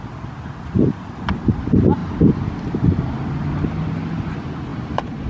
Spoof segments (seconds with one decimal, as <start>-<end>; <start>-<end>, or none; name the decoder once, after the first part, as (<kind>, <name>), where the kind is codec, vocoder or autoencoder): 4.7-5.3 (vocoder, BigVGAN v2)